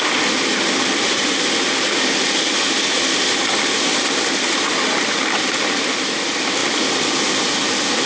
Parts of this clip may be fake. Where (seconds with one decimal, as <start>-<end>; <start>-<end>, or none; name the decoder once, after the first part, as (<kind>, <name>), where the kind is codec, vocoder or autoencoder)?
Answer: none